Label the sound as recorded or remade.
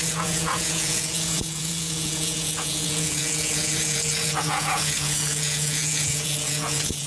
remade